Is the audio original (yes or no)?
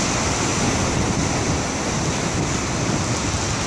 yes